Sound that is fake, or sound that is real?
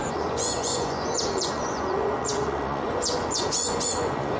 fake